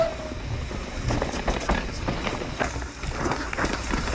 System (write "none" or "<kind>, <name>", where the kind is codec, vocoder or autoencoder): none